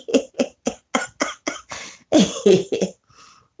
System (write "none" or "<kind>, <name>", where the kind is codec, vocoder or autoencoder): none